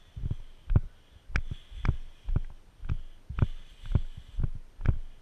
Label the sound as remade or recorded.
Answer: recorded